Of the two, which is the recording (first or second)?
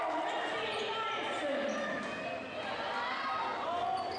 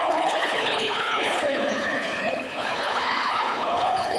first